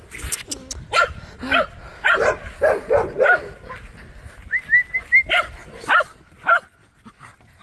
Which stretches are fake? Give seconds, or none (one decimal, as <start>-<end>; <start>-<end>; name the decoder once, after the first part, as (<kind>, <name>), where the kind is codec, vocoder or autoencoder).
none